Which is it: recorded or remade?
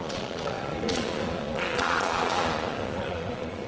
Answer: remade